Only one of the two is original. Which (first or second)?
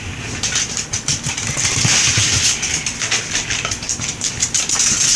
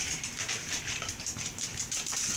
first